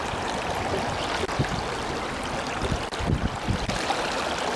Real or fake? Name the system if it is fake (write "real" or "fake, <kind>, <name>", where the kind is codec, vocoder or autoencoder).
real